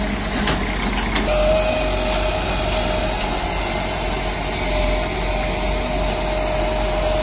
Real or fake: real